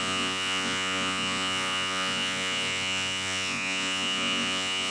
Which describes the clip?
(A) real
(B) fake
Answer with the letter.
B